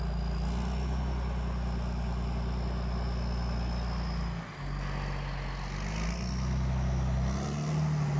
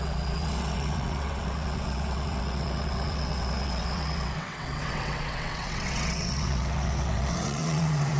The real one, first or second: first